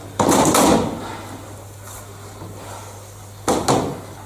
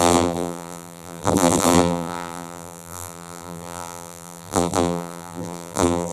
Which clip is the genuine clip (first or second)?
first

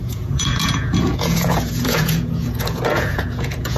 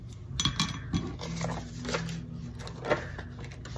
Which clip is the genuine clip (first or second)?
second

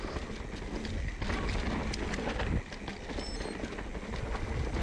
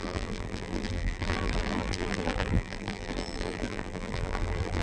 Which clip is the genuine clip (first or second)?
first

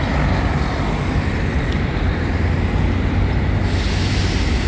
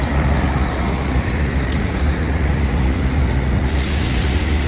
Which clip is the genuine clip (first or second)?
first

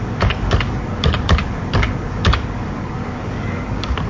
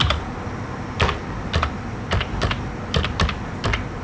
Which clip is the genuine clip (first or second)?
second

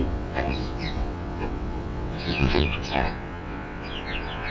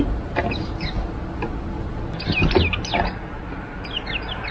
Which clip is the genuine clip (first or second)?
second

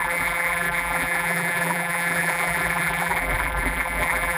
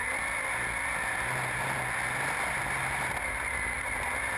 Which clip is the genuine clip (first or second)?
second